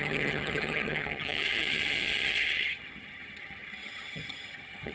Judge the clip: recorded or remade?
remade